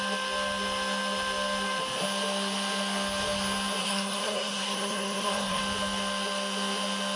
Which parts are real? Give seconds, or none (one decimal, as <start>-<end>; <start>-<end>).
0.0-3.8; 5.6-7.2